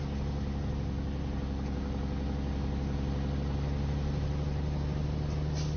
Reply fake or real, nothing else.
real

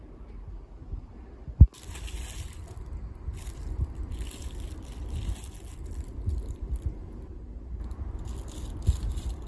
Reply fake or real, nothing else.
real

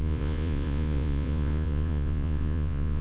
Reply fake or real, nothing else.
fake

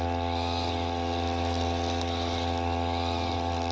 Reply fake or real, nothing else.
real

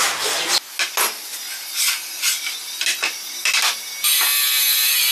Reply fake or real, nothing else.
real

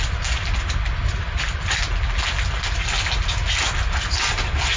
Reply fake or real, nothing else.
real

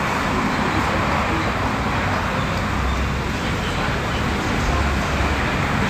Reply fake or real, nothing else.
real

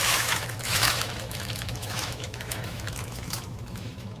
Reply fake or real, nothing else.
fake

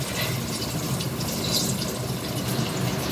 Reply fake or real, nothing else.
real